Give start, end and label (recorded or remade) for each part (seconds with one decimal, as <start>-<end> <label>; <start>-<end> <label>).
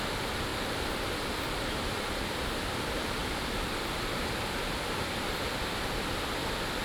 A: 0.0-0.5 recorded; 0.5-2.6 remade; 2.6-3.2 recorded; 3.2-6.8 remade